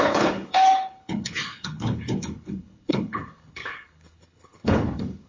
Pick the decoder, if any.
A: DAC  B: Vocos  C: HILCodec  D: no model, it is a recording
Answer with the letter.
C